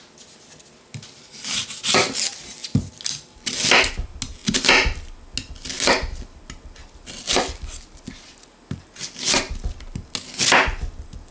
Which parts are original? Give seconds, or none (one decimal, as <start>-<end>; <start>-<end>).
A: 0.0-11.3